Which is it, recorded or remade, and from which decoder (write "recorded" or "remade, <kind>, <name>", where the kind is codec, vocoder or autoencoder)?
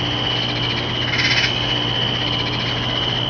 recorded